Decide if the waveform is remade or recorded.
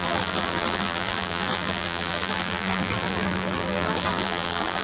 remade